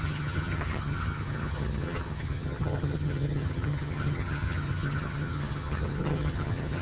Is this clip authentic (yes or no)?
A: no